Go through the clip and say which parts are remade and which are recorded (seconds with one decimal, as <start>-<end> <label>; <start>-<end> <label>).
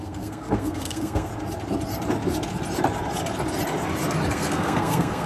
0.0-1.3 remade; 1.3-4.3 recorded; 4.3-5.3 remade